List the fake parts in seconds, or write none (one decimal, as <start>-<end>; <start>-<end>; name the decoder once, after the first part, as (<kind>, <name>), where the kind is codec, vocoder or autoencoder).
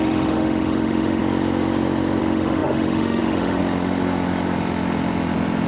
0.0-1.2 (autoencoder, DAC-VAE); 2.2-3.6